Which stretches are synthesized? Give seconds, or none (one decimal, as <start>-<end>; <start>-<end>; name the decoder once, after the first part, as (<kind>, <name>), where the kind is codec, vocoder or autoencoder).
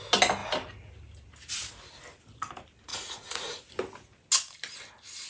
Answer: 2.9-3.7 (vocoder, Vocos)